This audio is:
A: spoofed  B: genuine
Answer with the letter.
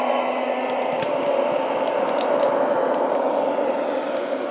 B